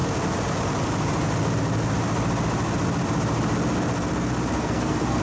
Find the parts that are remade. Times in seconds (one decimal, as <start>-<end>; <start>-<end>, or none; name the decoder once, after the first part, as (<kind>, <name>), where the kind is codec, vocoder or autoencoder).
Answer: 4.6-5.2 (codec, SNAC)